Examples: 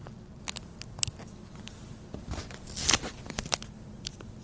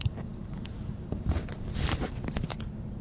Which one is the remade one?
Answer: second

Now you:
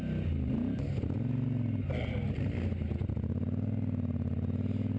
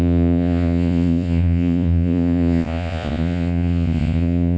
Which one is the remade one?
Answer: second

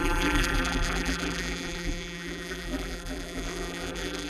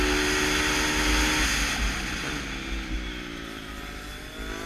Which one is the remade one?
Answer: first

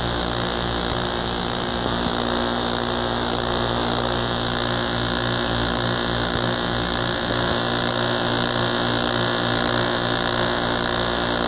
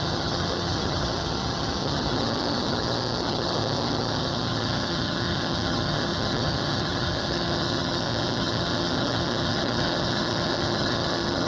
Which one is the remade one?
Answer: second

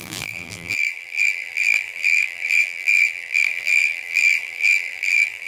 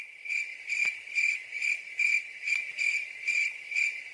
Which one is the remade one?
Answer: first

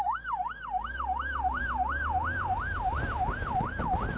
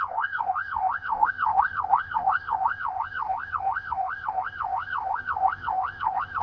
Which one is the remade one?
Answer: second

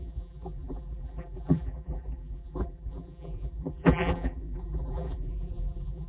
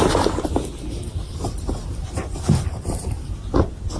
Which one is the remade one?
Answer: first